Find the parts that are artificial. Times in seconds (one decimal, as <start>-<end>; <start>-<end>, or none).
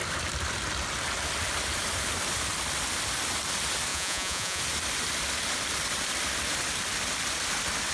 3.9-4.6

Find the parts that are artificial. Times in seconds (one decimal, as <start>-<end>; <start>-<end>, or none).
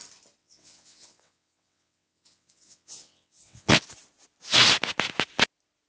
0.4-3.8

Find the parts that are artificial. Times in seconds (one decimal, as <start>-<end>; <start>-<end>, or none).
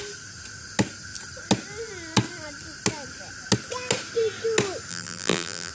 4.9-5.7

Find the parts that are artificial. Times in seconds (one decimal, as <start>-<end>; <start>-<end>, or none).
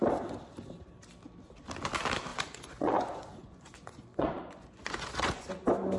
2.3-5.5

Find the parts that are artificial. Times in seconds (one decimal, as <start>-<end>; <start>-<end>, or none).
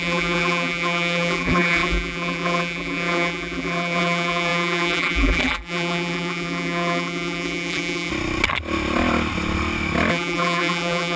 0.0-8.1; 10.1-11.2